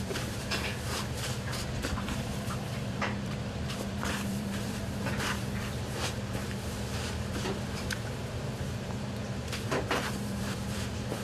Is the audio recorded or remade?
remade